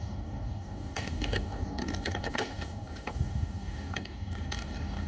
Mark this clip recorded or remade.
remade